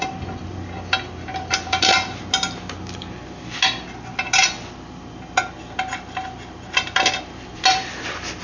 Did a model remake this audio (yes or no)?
no